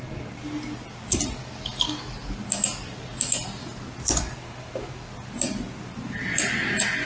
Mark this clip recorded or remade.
recorded